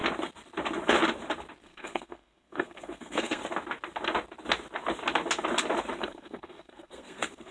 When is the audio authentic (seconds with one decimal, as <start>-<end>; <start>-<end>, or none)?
0.0-1.6; 3.4-6.0